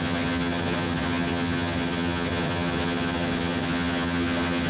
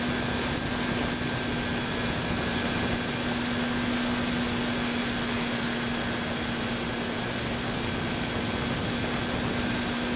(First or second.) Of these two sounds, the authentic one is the second